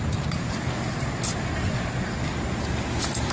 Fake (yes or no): no